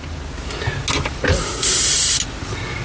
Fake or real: real